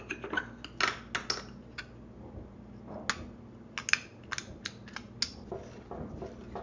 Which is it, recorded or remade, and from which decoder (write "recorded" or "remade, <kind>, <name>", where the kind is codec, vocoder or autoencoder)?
recorded